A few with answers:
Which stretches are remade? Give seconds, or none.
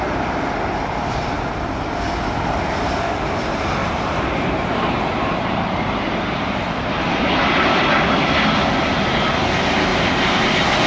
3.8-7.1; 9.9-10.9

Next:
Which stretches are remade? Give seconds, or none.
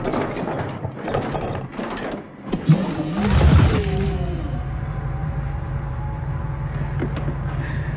5.2-6.0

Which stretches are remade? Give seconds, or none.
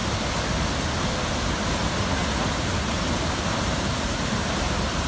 0.0-0.5; 1.8-5.1